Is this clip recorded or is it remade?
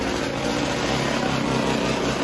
recorded